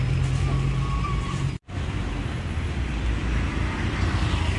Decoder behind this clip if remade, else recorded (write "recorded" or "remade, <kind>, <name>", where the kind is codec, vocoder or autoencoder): recorded